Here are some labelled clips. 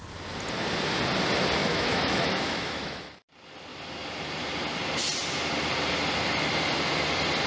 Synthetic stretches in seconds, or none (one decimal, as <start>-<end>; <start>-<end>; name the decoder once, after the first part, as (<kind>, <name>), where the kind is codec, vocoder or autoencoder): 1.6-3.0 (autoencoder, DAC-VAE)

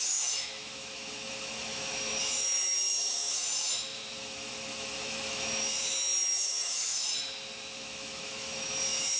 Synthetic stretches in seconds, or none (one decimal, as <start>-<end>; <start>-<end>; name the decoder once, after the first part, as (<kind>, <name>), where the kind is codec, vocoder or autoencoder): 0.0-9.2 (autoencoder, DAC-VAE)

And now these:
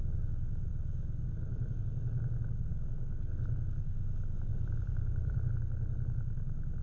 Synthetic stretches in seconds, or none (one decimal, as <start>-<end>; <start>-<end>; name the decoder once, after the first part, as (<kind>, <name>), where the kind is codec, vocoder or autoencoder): 0.7-1.8 (vocoder, BigVGAN v2); 4.5-5.5

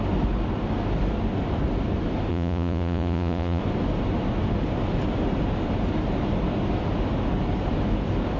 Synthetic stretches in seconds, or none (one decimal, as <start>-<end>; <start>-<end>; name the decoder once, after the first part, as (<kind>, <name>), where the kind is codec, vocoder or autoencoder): 2.3-3.6 (vocoder, Vocos)